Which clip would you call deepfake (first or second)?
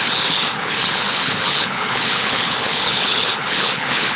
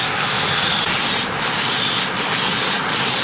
first